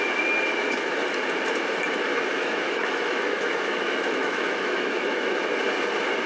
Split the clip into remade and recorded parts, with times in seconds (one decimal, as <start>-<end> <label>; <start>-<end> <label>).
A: 0.0-2.3 recorded; 2.3-5.4 remade; 5.4-6.3 recorded